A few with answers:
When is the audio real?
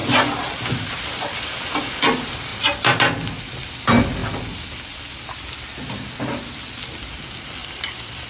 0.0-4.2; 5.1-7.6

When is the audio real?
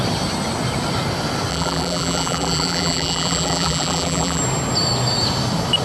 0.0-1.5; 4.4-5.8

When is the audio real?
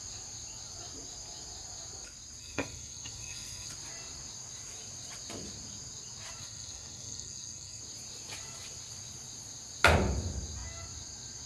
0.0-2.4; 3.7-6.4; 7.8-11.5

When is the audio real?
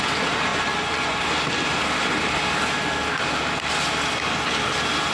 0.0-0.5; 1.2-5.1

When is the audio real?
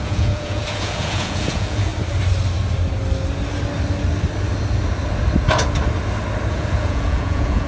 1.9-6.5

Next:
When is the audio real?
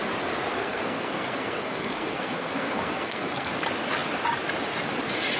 0.0-0.5; 3.5-5.4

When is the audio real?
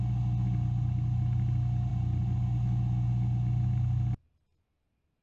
0.0-5.2